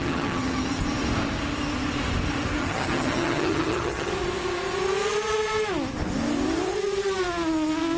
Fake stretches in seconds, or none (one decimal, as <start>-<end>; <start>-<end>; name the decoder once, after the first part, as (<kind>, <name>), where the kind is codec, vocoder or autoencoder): 0.0-0.8 (vocoder, HiFi-GAN); 2.6-4.1